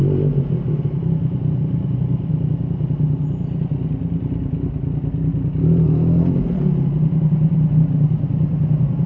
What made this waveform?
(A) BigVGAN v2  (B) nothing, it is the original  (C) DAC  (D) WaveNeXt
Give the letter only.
B